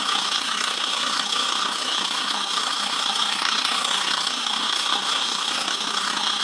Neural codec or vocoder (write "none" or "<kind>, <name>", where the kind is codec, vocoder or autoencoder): codec, SNAC